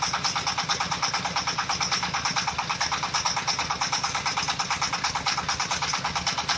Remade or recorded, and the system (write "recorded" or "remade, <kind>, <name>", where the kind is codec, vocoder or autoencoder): recorded